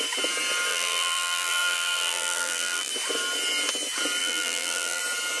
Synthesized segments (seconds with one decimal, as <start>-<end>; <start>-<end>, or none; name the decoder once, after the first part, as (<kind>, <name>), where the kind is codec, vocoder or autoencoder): 0.7-2.9 (vocoder, BigVGAN v2); 4.2-5.0